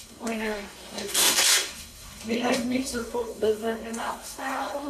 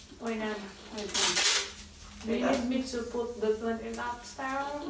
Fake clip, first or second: first